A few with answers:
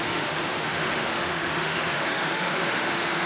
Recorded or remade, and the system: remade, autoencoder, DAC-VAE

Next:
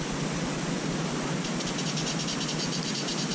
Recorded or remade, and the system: recorded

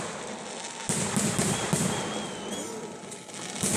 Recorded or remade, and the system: recorded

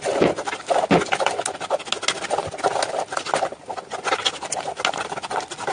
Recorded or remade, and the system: recorded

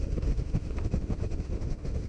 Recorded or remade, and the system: remade, autoencoder, DAC-VAE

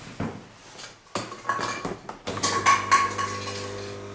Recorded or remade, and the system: recorded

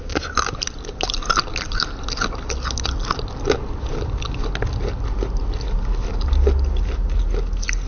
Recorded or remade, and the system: recorded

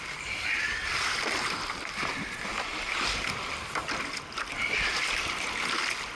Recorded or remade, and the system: recorded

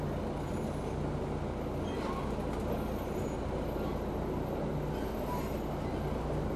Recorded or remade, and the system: recorded